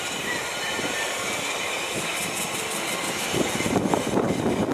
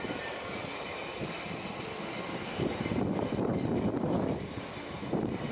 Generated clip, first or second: second